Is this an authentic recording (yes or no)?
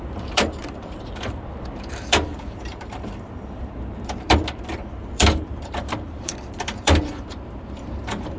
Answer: no